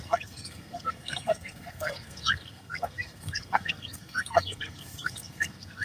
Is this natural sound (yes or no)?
no